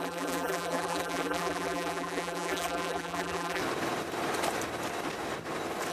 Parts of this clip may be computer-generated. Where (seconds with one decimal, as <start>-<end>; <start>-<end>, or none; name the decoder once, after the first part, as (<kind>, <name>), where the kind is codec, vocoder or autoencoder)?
0.0-3.6 (vocoder, BigVGAN v2)